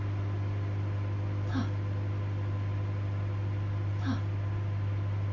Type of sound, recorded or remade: recorded